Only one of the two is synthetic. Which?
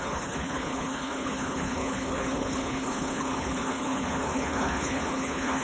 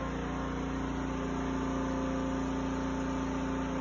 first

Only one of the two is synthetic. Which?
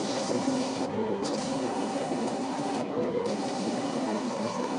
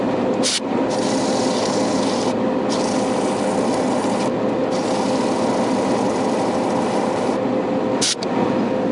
first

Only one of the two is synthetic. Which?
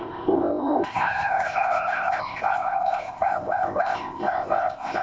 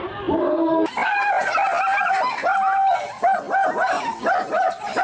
first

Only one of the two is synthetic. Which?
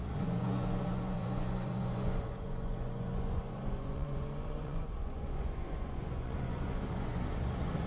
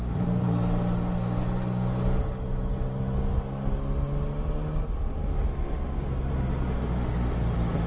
first